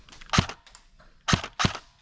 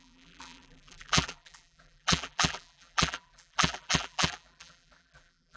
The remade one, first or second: second